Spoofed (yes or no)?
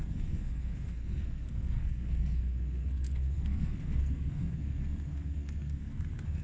yes